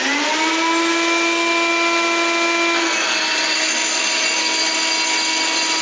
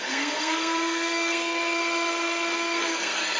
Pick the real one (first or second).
first